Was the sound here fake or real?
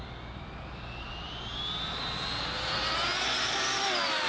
real